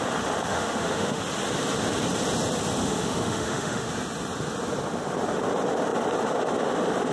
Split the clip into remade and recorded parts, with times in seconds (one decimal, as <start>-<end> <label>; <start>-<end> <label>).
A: 0.0-0.5 recorded; 0.5-1.2 remade; 1.2-2.8 recorded; 2.8-3.9 remade; 3.9-7.1 recorded